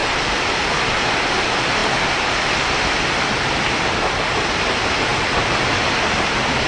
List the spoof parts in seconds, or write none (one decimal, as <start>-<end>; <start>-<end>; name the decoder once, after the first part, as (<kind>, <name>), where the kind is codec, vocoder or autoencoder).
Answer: none